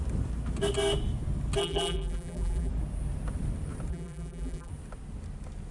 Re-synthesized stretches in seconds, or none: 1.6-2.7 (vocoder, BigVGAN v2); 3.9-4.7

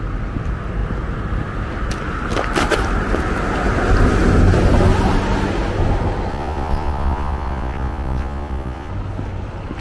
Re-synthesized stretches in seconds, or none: 6.3-8.9 (vocoder, Vocos)

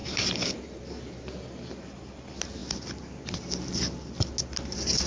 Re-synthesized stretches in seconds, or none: 0.0-0.8 (vocoder, BigVGAN v2)

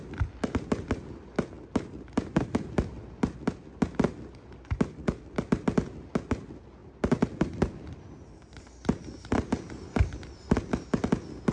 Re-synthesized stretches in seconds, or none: 6.8-9.5 (vocoder, BigVGAN v2)

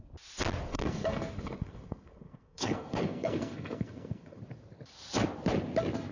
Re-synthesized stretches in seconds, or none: 0.7-4.4 (codec, SNAC)

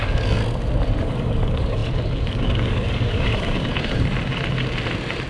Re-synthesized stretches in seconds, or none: 0.0-0.4 (codec, DAC); 1.0-3.7

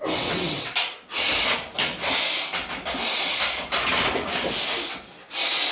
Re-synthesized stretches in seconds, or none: 0.0-0.7 (vocoder, WaveNeXt)

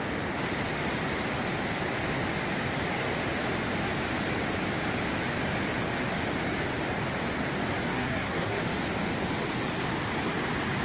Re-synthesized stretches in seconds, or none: 7.9-8.6 (codec, SNAC)